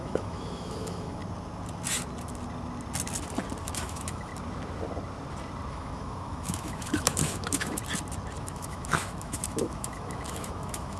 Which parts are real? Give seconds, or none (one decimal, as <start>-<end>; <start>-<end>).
1.2-3.6; 4.3-5.7; 7.8-8.4